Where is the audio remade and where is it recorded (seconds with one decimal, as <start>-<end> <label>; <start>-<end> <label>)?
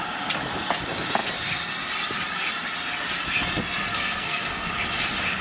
0.0-3.9 recorded; 3.9-4.7 remade; 4.7-5.4 recorded